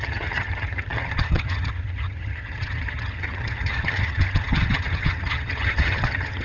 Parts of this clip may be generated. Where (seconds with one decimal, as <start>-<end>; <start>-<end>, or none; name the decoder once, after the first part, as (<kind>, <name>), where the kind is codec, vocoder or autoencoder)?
0.0-6.4 (vocoder, HiFi-GAN)